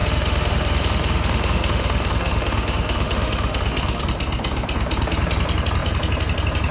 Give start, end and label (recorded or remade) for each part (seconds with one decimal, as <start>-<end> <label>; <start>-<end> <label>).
0.0-4.0 remade; 4.0-6.7 recorded